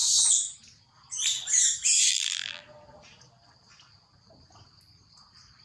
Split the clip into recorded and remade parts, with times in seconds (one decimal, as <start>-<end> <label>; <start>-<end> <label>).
0.0-2.1 recorded; 2.1-2.6 remade; 2.6-5.6 recorded